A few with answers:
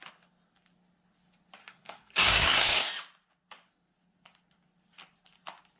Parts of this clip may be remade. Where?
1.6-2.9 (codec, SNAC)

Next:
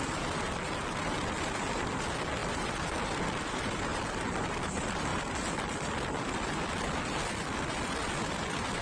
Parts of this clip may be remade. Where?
none

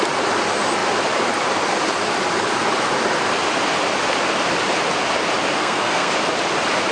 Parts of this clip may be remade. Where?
5.6-6.1 (codec, SNAC)